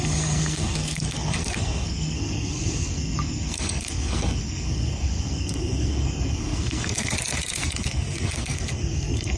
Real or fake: fake